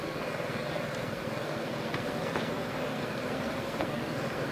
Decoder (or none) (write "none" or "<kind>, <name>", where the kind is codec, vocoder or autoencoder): codec, SNAC